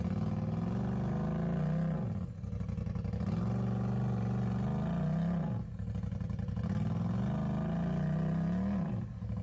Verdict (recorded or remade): recorded